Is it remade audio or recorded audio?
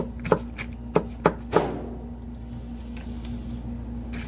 recorded